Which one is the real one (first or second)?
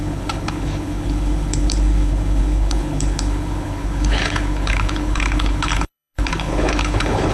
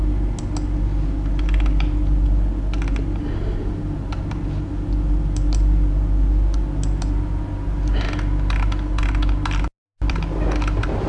second